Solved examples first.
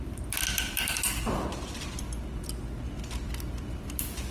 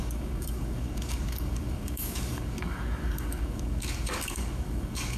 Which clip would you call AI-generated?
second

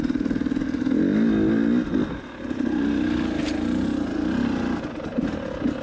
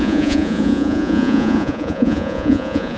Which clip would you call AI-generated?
second